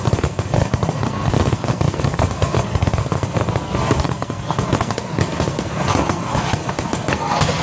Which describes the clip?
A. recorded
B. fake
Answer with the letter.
B